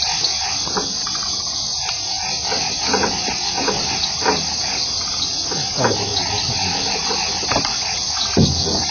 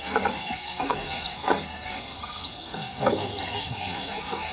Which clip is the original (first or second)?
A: first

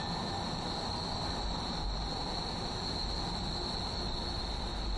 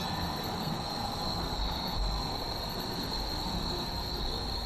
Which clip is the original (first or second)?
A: first